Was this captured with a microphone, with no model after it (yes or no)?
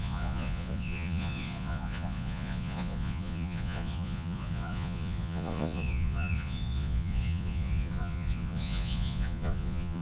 no